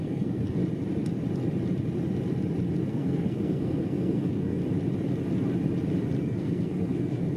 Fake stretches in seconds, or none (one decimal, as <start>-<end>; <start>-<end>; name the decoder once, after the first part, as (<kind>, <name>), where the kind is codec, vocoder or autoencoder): 0.0-0.6 (codec, SNAC); 2.9-4.6; 6.2-7.4